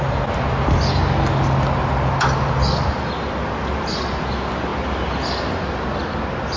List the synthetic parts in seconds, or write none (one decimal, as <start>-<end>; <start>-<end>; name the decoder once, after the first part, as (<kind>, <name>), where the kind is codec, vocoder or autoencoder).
none

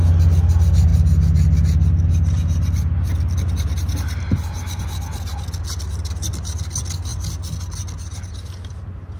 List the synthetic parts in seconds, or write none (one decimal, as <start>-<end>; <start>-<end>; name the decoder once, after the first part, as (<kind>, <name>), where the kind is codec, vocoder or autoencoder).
none